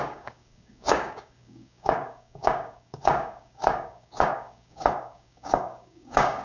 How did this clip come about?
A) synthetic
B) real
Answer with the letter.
A